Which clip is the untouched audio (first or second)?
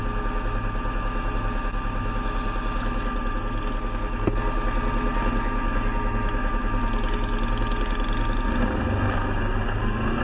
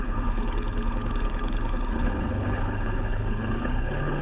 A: first